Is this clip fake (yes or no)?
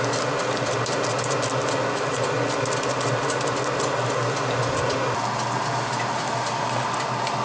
no